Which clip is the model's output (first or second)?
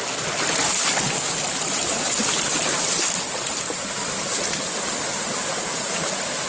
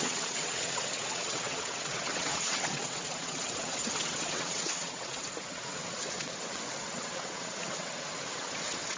second